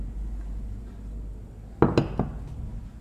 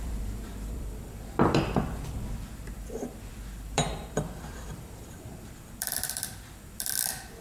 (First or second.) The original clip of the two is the first